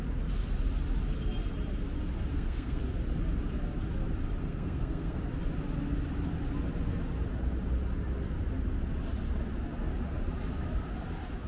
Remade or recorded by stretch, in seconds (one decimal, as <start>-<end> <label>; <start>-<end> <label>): 0.0-2.3 recorded; 2.3-2.8 remade; 2.8-4.4 recorded; 4.4-5.2 remade; 5.2-11.5 recorded